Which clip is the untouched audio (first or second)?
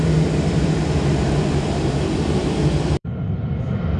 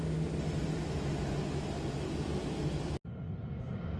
second